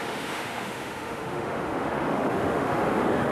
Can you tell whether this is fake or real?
fake